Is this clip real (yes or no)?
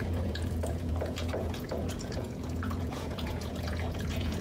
no